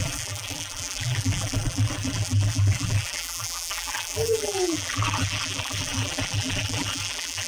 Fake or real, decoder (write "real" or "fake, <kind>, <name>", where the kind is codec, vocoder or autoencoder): fake, vocoder, BigVGAN v2